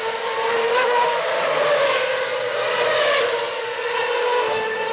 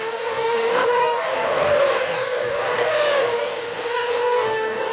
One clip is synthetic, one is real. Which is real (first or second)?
first